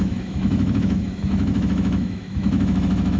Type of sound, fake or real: fake